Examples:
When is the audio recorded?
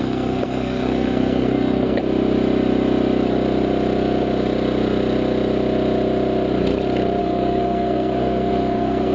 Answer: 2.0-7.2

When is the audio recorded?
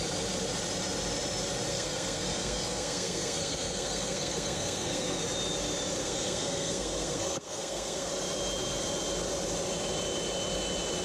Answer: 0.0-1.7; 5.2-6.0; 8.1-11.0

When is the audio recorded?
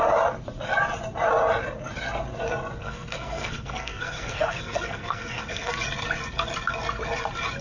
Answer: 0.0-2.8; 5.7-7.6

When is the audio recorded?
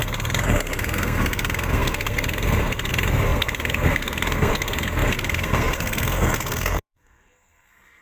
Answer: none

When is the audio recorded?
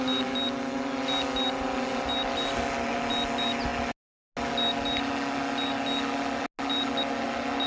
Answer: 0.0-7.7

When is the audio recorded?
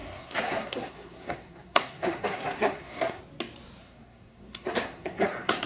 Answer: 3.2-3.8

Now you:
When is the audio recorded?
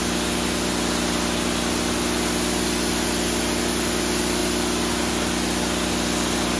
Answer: 0.0-6.6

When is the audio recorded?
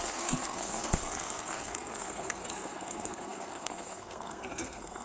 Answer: none